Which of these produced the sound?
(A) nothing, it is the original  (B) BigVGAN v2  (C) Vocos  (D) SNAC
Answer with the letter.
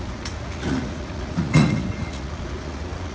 C